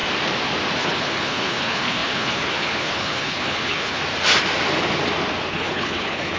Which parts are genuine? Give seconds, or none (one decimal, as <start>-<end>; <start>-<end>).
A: 0.0-0.8; 4.0-5.5